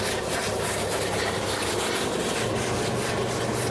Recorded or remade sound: recorded